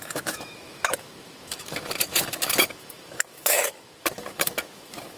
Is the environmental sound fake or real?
fake